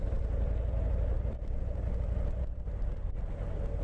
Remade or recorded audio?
recorded